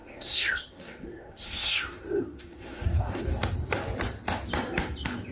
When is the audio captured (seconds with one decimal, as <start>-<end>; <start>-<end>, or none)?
3.2-5.3